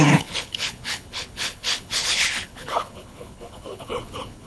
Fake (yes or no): yes